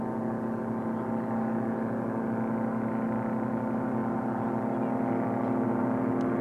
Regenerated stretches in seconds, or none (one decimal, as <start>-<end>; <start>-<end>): none